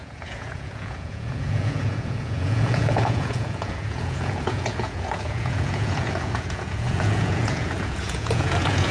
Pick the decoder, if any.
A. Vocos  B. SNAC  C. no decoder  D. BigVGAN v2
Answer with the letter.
A